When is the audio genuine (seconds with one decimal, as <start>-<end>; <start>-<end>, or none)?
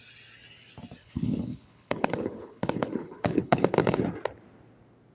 0.0-1.0; 4.0-5.1